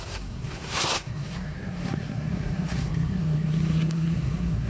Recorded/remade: remade